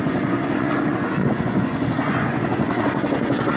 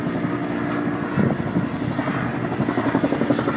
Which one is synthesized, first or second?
first